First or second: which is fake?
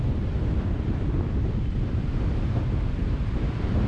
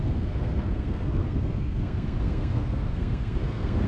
second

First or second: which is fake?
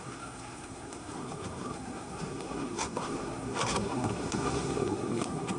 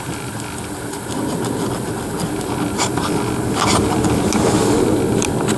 first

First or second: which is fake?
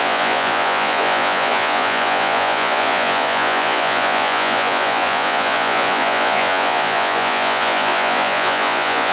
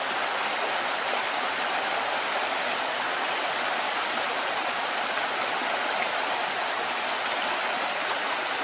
first